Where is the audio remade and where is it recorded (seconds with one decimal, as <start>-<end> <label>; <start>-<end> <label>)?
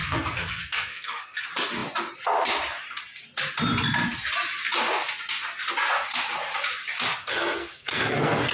0.0-1.4 remade; 1.4-7.1 recorded; 7.1-8.5 remade